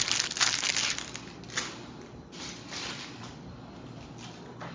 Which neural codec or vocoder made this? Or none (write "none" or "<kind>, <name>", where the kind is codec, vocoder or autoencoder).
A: none